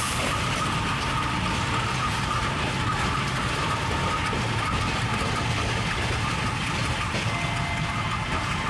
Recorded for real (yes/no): yes